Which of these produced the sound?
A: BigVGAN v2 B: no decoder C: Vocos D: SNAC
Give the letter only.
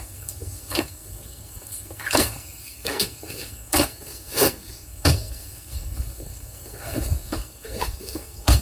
D